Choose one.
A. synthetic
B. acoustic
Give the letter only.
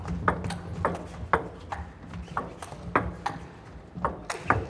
B